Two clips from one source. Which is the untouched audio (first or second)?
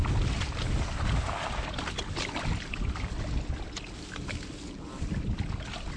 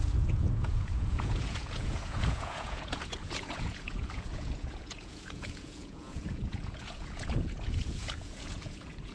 first